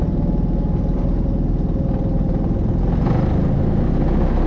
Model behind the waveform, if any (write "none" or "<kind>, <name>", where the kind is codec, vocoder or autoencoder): none